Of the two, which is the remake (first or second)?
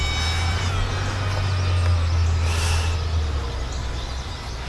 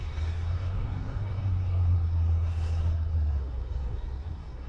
second